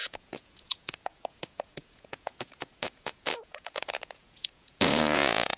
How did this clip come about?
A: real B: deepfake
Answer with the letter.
B